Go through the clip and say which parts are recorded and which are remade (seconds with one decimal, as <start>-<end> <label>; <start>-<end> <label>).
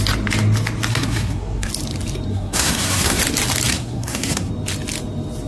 0.0-0.9 recorded; 0.9-1.7 remade; 1.7-2.3 recorded; 2.3-3.2 remade; 3.2-3.7 recorded; 3.7-4.5 remade; 4.5-5.5 recorded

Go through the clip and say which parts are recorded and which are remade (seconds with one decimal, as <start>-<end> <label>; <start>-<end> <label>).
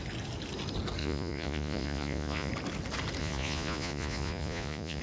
0.0-1.0 recorded; 1.0-2.5 remade; 2.5-3.2 recorded; 3.2-5.0 remade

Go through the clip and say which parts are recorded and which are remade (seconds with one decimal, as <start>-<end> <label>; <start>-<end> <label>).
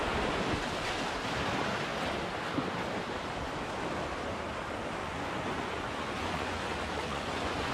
0.0-5.0 recorded; 5.0-7.7 remade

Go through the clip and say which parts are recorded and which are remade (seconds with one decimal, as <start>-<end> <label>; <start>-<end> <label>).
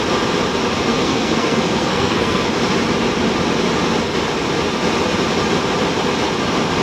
0.0-0.9 recorded; 0.9-2.5 remade; 2.5-6.8 recorded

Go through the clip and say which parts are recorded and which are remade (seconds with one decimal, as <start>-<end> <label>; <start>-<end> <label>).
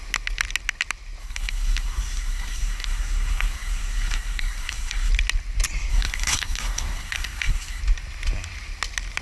0.0-1.2 recorded; 1.2-5.1 remade; 5.1-5.9 recorded; 5.9-7.8 remade; 7.8-9.2 recorded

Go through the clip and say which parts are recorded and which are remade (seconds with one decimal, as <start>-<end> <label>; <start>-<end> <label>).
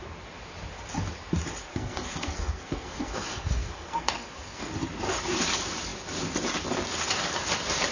0.0-1.7 recorded; 1.7-4.7 remade; 4.7-7.9 recorded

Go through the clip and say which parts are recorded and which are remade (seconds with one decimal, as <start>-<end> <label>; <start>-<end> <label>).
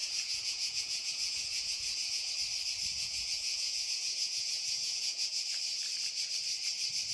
0.0-2.3 remade; 2.3-2.9 recorded; 2.9-5.4 remade; 5.4-7.1 recorded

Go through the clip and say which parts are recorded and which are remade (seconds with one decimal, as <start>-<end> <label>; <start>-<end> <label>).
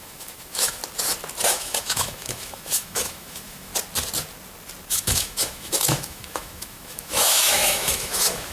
0.0-0.8 remade; 0.8-1.5 recorded; 1.5-3.7 remade; 3.7-4.9 recorded; 4.9-8.5 remade